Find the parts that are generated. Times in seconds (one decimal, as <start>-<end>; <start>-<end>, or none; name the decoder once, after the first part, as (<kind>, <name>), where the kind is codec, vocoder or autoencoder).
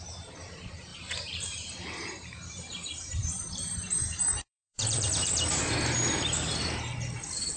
0.9-5.5 (vocoder, BigVGAN v2)